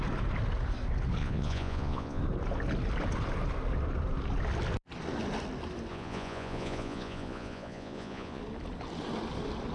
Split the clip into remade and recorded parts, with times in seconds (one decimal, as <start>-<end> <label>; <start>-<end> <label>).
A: 0.0-1.2 recorded; 1.2-2.2 remade; 2.2-5.9 recorded; 5.9-8.4 remade; 8.4-9.7 recorded